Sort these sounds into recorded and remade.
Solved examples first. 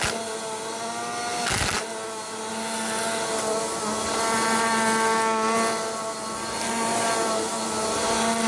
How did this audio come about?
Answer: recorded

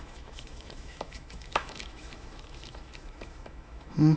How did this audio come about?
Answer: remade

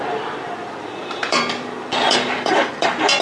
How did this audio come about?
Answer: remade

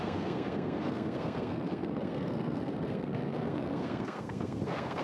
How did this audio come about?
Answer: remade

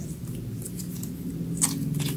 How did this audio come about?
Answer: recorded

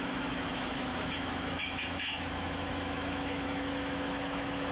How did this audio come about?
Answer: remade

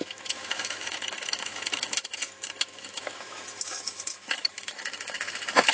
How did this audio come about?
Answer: remade